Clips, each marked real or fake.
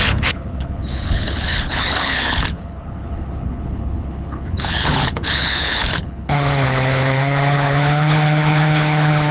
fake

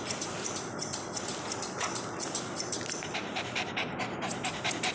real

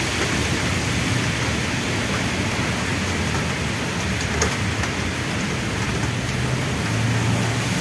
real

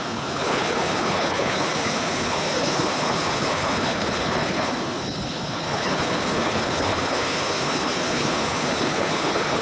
fake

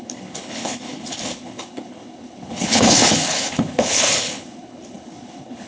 fake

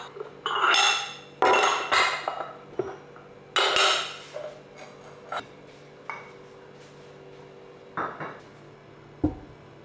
real